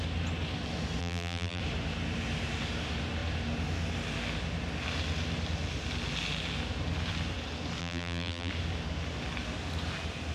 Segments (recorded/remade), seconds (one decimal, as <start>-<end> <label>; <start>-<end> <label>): 0.0-1.0 recorded; 1.0-1.6 remade; 1.6-7.8 recorded; 7.8-8.5 remade; 8.5-10.3 recorded

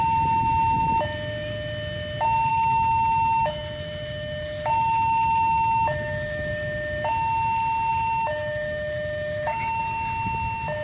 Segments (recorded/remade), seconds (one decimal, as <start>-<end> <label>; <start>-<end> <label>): 0.0-2.5 recorded; 2.5-6.5 remade; 6.5-7.9 recorded; 7.9-9.8 remade; 9.8-10.8 recorded

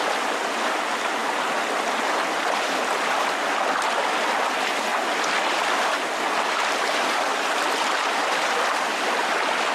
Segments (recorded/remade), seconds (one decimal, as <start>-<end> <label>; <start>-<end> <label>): 0.0-1.2 remade; 1.2-2.2 recorded; 2.2-4.9 remade; 4.9-5.5 recorded; 5.5-9.7 remade

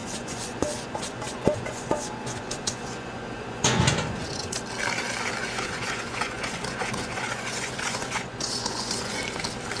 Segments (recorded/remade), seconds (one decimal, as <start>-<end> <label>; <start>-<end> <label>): 0.0-4.6 remade; 4.6-5.4 recorded; 5.4-9.2 remade; 9.2-9.8 recorded

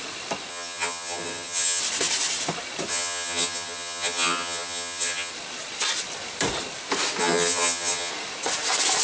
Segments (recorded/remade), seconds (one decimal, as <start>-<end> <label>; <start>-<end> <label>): 0.0-0.5 recorded; 0.5-1.8 remade; 1.8-2.9 recorded; 2.9-5.3 remade; 5.3-7.2 recorded; 7.2-8.1 remade; 8.1-9.0 recorded